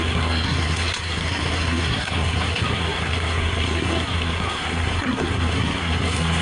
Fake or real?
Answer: fake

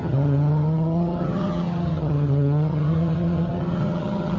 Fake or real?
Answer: fake